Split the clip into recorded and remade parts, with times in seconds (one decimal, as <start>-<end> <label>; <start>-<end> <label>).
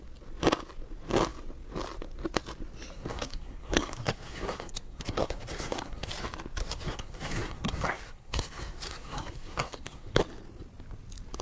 0.0-2.9 recorded; 2.9-6.1 remade; 6.1-6.6 recorded; 6.6-10.2 remade; 10.2-11.4 recorded